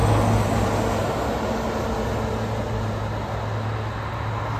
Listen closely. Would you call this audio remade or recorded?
recorded